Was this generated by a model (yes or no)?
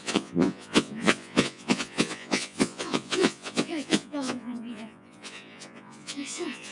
yes